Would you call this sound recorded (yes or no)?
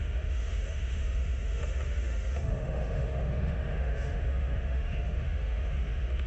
no